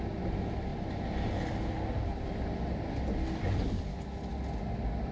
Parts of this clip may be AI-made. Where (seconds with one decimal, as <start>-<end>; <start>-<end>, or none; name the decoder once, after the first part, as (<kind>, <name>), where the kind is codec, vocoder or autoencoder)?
none